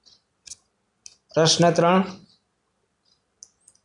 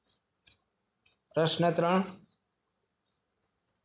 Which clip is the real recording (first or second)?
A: first